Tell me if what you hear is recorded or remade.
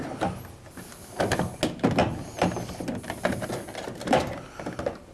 recorded